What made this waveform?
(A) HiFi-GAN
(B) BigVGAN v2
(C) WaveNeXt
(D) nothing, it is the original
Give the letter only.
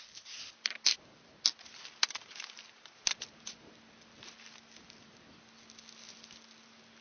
D